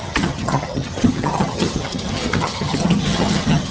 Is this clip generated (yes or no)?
yes